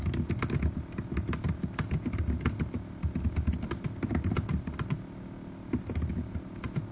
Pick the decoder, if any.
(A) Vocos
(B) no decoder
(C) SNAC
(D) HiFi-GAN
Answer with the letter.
B